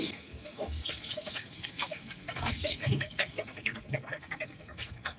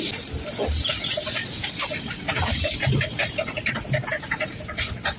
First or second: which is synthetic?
first